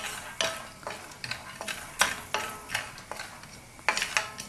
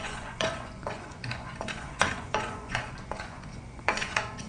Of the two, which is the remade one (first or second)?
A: second